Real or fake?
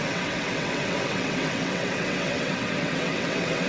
fake